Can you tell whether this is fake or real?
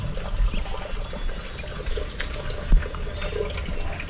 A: real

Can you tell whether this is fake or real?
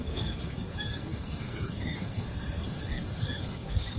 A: fake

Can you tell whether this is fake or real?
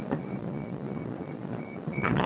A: fake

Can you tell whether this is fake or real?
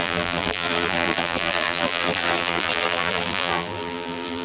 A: fake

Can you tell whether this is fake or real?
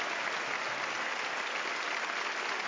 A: real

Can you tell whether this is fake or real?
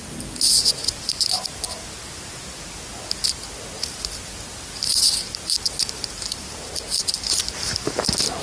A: real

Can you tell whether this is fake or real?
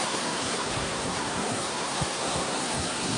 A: fake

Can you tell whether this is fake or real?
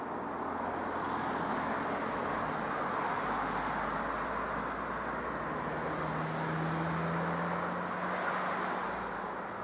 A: real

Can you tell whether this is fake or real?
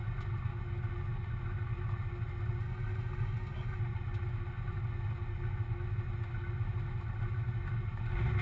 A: real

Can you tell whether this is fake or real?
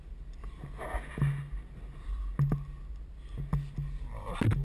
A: real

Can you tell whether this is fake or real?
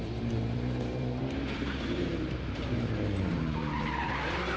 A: fake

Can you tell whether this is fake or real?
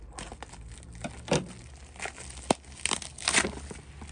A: real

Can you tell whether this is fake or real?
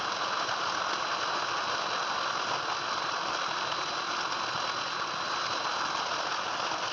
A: real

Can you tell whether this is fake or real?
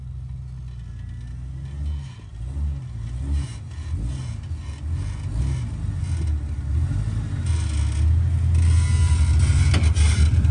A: real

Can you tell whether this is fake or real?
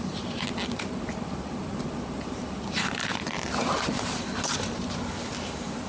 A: real